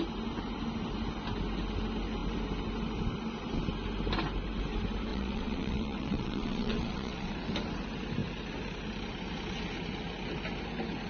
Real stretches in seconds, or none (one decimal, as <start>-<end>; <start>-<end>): 0.0-5.1; 7.3-11.1